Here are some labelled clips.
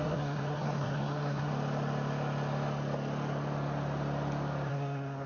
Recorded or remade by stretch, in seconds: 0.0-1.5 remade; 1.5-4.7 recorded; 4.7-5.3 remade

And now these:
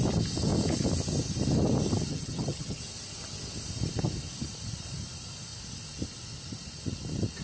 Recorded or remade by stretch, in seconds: 0.0-2.1 recorded; 2.1-2.8 remade; 2.8-7.4 recorded

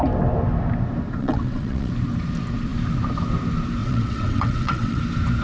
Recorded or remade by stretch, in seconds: 0.0-1.2 recorded; 1.2-1.9 remade; 1.9-3.8 recorded; 3.8-5.0 remade; 5.0-5.4 recorded